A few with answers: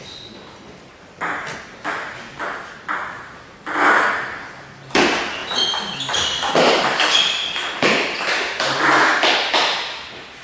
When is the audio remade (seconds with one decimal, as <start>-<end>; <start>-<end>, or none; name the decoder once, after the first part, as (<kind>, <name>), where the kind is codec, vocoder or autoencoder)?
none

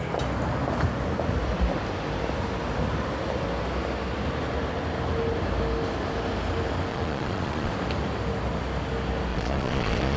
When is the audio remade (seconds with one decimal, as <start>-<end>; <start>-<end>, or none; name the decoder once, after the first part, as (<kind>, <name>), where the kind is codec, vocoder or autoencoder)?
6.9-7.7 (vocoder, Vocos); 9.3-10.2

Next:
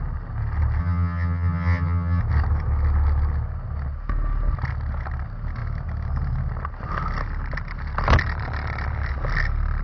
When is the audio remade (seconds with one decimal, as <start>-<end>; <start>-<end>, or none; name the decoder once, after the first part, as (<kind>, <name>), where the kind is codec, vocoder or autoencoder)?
0.8-2.2 (vocoder, HiFi-GAN)

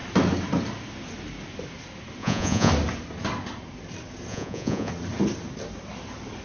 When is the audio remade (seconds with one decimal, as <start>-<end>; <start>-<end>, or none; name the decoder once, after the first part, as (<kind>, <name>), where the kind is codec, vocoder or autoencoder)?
2.2-2.7 (vocoder, Vocos); 4.3-4.9

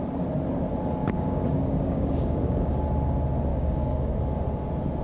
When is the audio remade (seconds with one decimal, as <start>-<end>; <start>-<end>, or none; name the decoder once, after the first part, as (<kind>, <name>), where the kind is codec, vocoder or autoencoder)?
1.0-2.7 (codec, DAC); 3.5-4.2

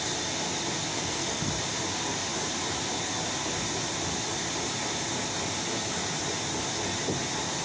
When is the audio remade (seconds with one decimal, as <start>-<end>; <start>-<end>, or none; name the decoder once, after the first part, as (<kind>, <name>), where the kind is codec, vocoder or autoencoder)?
0.9-1.5 (codec, SNAC)

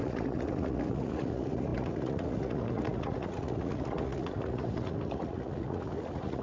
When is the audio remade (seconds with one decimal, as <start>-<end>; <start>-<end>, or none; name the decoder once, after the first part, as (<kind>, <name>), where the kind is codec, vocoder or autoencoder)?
0.0-6.4 (vocoder, Vocos)